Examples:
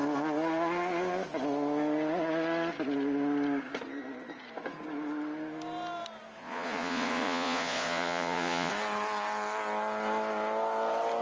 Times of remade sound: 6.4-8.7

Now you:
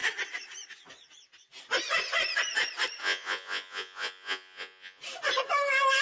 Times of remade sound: 3.0-5.0

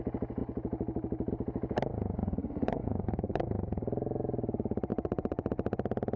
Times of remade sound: 2.2-3.4; 4.9-5.5